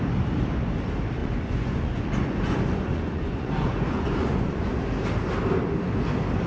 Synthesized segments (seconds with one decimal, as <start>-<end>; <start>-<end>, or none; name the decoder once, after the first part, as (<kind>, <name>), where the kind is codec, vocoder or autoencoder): 1.2-4.7 (vocoder, Vocos)